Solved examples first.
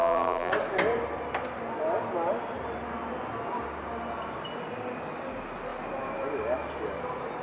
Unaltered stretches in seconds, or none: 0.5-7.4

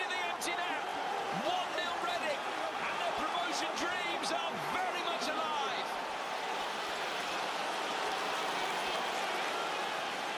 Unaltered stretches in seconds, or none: 0.0-0.9; 4.5-10.4

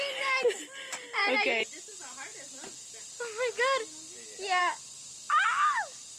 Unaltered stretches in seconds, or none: 0.0-6.2

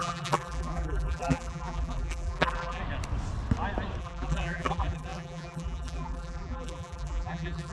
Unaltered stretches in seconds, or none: 2.8-4.0

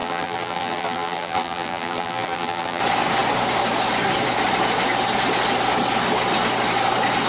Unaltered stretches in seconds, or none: 2.8-7.3